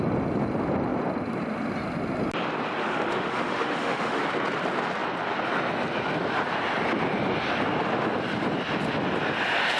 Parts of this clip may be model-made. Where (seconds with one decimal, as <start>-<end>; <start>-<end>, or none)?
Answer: 2.8-4.2